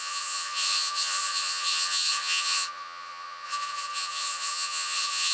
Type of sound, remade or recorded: remade